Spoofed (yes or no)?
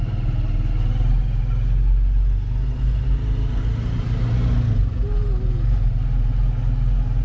no